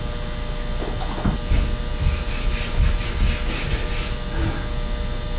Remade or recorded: recorded